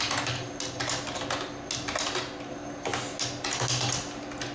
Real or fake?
real